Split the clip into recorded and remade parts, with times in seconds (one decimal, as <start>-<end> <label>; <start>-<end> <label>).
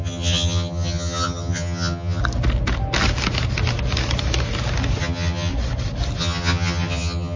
0.0-2.2 remade; 2.2-5.0 recorded; 5.0-5.5 remade; 5.5-6.2 recorded; 6.2-7.4 remade